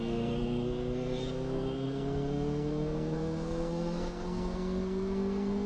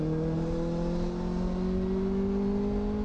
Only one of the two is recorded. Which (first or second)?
second